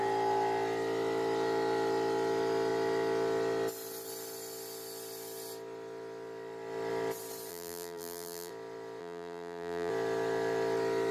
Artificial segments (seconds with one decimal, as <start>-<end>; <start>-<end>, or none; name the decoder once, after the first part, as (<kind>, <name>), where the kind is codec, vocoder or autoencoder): 7.5-8.5 (vocoder, BigVGAN v2); 9.0-9.9